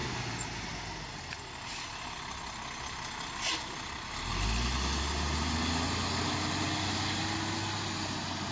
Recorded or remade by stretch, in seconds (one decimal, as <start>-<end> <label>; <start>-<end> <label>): 0.0-8.5 recorded